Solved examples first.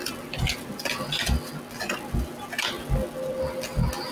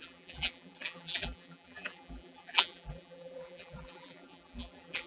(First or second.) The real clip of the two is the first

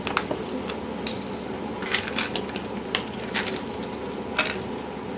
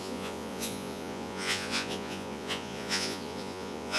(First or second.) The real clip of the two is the first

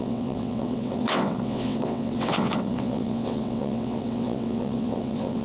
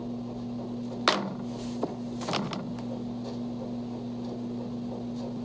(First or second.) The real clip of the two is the second